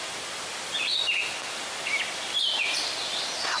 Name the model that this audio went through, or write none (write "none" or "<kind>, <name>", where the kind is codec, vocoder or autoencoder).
vocoder, BigVGAN v2